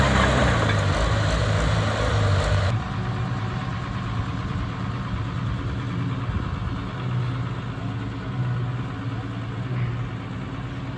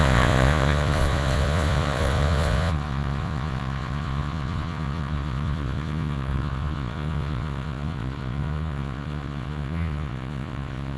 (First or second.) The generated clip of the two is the second